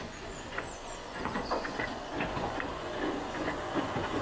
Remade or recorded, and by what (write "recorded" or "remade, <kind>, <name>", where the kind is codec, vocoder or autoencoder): remade, vocoder, Vocos